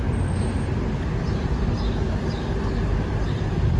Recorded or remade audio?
recorded